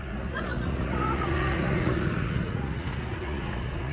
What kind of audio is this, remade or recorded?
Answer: remade